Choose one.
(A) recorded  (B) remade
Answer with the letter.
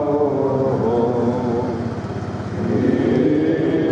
A